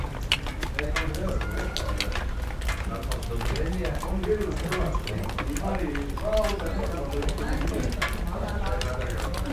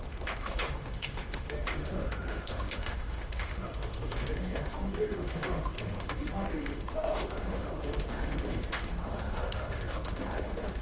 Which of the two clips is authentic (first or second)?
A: first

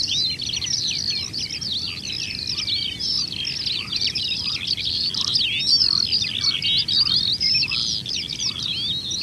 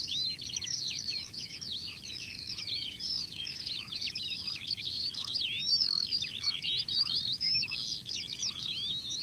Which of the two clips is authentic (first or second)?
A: first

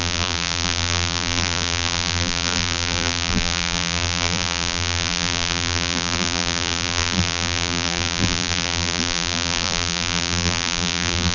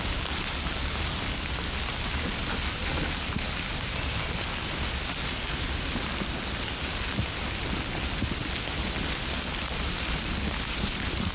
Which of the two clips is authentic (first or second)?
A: second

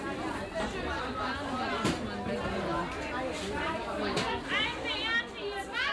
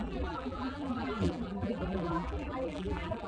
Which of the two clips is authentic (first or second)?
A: first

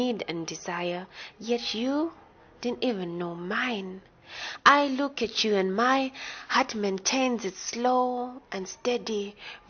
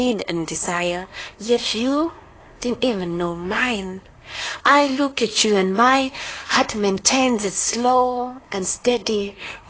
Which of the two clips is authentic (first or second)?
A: first